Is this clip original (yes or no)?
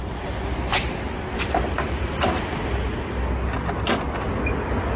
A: yes